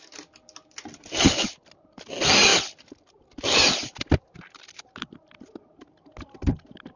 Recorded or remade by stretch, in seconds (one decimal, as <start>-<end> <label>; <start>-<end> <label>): 0.0-2.5 recorded; 2.5-4.7 remade; 4.7-7.0 recorded